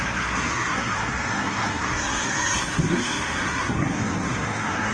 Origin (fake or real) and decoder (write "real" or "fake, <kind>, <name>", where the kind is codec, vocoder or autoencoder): fake, codec, SNAC